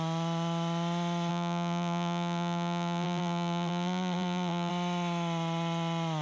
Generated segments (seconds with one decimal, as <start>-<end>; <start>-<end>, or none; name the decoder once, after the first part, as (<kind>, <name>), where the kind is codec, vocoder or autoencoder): 1.3-4.7 (vocoder, BigVGAN v2)